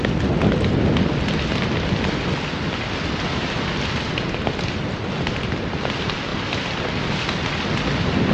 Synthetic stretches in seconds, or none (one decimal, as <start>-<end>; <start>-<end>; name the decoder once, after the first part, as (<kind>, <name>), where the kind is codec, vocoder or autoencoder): 6.3-7.4 (vocoder, BigVGAN v2)